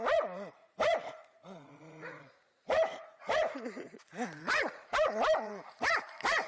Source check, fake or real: fake